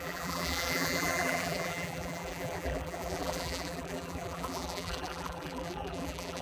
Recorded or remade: remade